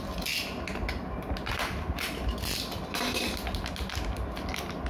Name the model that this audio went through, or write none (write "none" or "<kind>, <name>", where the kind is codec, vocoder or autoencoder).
none